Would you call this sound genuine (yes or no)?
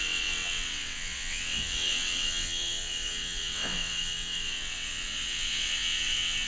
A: no